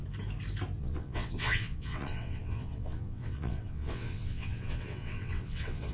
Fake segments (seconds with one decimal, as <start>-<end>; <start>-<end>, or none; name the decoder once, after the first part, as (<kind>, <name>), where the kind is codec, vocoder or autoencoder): 0.8-5.9 (vocoder, WaveNeXt)